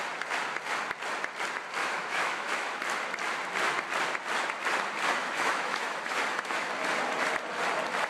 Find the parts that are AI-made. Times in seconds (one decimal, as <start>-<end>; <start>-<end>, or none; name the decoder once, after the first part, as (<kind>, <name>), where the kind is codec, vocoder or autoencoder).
1.8-2.8 (autoencoder, DAC-VAE); 5.2-6.7